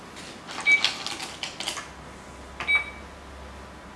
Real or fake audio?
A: real